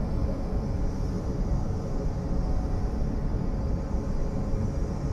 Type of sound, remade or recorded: recorded